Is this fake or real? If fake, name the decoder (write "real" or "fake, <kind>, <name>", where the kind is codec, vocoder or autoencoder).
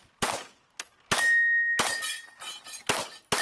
real